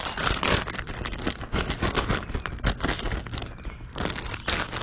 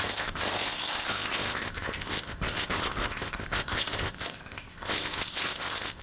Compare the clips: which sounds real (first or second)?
first